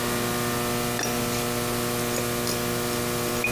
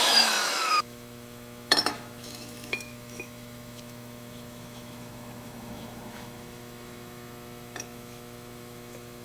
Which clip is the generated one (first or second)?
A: second